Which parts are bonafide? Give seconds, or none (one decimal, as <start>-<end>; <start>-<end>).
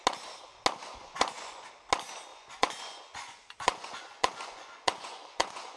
0.0-1.0; 1.7-2.3